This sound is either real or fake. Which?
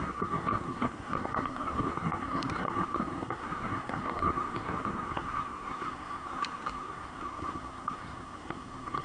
fake